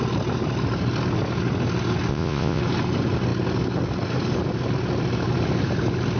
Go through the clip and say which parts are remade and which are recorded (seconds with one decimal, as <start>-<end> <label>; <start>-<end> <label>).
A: 0.0-2.1 recorded; 2.1-2.6 remade; 2.6-6.2 recorded

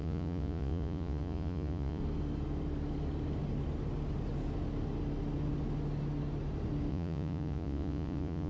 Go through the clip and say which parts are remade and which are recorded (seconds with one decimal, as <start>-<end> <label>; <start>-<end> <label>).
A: 0.0-2.0 remade; 2.0-6.9 recorded; 6.9-8.5 remade

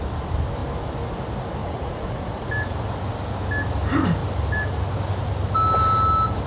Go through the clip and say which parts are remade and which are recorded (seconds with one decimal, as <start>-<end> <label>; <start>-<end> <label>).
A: 0.0-1.6 recorded; 1.6-2.5 remade; 2.5-6.5 recorded

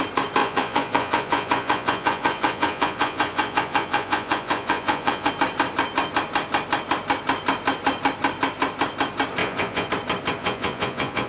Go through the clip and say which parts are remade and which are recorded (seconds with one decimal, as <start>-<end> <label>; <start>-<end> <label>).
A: 0.0-0.4 recorded; 0.4-5.3 remade; 5.3-9.4 recorded; 9.4-9.9 remade; 9.9-10.4 recorded; 10.4-11.3 remade

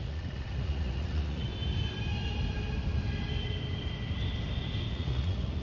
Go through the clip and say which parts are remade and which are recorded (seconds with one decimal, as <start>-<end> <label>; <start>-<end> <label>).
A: 0.0-1.5 remade; 1.5-4.9 recorded; 4.9-5.6 remade

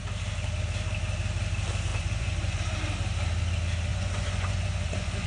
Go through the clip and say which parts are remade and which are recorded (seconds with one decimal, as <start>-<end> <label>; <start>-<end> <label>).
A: 0.0-1.9 recorded; 1.9-2.6 remade; 2.6-3.9 recorded; 3.9-5.3 remade

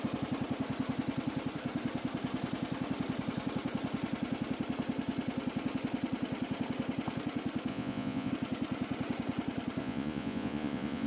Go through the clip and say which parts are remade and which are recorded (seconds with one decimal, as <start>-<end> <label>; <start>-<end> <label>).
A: 0.0-7.7 recorded; 7.7-8.3 remade; 8.3-9.8 recorded; 9.8-11.1 remade

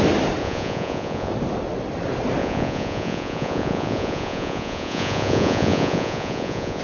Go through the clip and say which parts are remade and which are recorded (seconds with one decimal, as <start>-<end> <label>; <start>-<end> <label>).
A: 0.0-0.4 recorded; 0.4-1.3 remade; 1.3-2.4 recorded; 2.4-6.8 remade